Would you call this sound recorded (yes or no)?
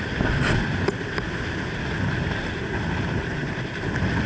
yes